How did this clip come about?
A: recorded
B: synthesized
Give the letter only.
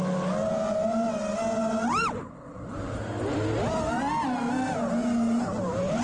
A